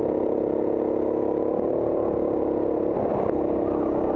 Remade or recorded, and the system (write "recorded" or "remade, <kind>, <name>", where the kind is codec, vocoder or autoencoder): recorded